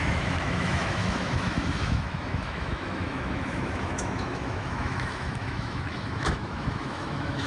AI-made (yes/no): yes